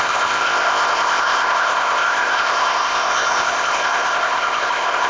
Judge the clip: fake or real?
fake